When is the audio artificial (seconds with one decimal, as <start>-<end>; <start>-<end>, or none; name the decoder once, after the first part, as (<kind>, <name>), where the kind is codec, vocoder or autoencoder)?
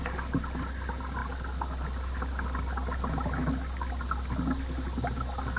none